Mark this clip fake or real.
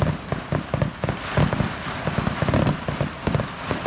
real